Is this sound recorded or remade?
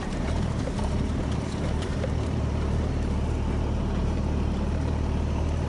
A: remade